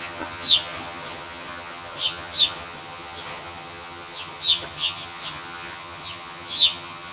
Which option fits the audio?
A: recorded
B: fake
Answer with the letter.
B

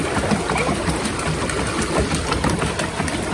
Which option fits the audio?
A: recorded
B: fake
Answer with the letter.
A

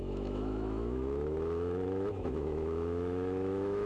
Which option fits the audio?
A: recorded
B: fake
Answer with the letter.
B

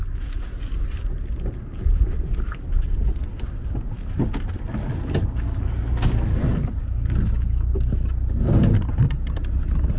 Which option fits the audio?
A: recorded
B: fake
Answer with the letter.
A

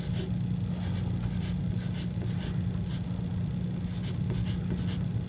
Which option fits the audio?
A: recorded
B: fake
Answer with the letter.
A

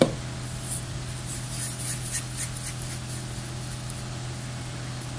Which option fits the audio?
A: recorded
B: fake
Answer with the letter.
A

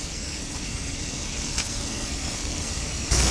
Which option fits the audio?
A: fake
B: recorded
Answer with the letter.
A